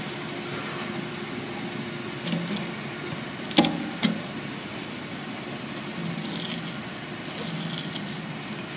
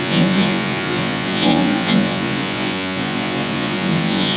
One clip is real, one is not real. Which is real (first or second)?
first